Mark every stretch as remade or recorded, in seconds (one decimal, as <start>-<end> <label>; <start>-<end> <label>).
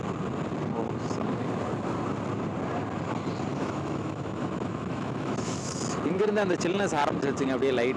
0.0-3.5 recorded; 3.5-5.8 remade; 5.8-8.0 recorded